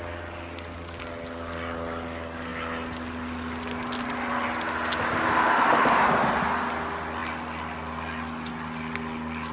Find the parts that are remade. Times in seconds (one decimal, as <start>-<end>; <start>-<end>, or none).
none